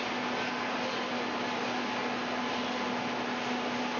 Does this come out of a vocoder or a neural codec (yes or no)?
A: no